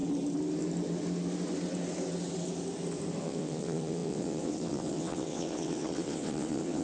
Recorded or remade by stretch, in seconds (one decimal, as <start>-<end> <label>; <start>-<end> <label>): 0.0-3.2 recorded; 3.2-6.8 remade